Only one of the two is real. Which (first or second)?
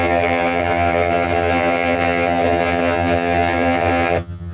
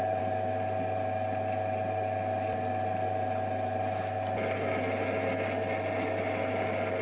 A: second